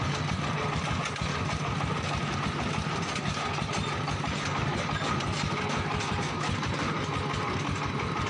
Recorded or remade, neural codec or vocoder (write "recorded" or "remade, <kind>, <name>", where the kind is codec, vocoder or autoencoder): recorded